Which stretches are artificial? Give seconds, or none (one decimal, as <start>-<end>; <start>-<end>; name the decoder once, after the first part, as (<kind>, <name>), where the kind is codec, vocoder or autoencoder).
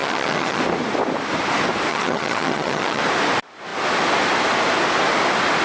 0.0-0.6 (vocoder, HiFi-GAN); 1.9-3.0